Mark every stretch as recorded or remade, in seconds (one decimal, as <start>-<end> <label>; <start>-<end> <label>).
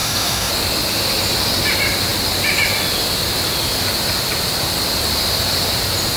0.0-0.5 remade; 0.5-6.2 recorded